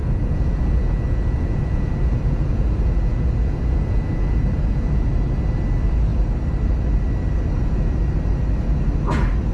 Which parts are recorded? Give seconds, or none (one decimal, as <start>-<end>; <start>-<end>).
5.1-9.5